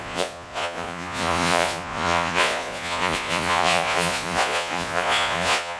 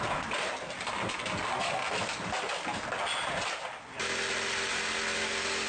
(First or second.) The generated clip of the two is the first